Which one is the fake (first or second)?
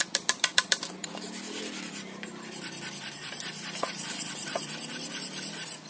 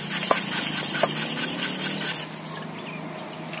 first